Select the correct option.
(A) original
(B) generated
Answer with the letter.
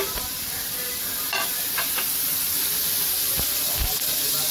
A